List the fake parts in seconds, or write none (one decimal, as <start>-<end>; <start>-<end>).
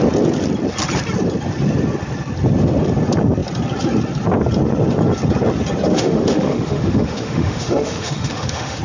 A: 5.9-8.8